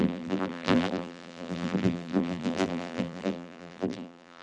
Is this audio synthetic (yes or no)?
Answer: yes